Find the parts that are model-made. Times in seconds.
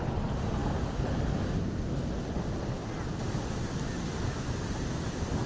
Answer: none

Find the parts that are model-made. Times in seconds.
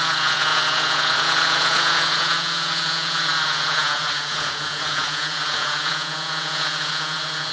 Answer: 0.0-7.5 (vocoder, Vocos)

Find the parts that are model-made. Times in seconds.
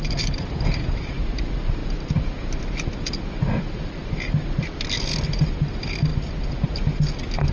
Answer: none